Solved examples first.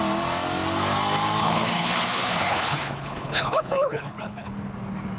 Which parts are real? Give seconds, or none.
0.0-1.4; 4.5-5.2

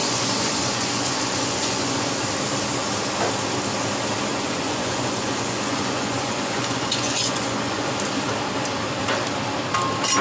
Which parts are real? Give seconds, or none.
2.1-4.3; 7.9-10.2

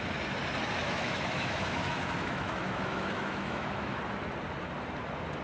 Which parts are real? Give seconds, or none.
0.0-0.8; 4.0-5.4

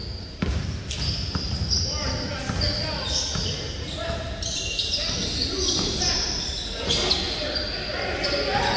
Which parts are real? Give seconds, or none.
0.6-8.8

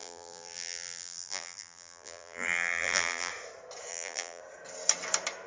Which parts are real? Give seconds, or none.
3.3-3.9; 4.4-5.5

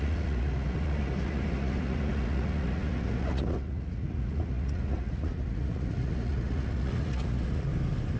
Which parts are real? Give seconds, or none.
7.7-8.2